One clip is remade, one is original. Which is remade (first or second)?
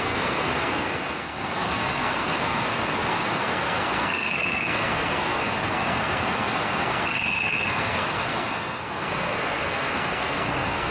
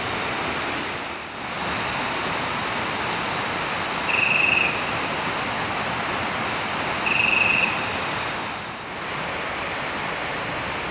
first